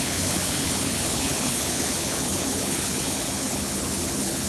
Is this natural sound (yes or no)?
no